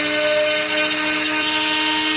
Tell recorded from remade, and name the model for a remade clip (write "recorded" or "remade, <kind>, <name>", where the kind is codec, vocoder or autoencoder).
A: recorded